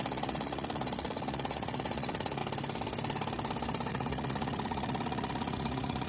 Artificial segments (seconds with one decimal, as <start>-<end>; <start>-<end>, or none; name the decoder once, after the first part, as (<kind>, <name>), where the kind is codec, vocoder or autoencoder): 0.0-2.4 (vocoder, Vocos); 3.9-6.1